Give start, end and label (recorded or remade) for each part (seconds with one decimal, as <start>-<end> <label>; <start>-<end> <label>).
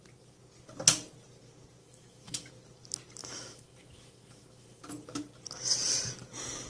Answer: 0.0-1.8 recorded; 1.8-2.5 remade; 2.5-3.2 recorded; 3.2-4.8 remade; 4.8-6.7 recorded